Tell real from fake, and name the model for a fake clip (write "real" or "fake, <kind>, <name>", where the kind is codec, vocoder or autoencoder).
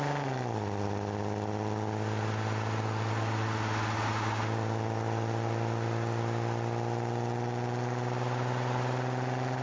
real